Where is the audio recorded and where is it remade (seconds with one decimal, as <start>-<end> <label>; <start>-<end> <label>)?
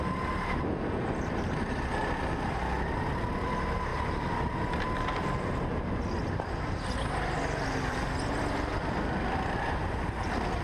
0.0-10.6 recorded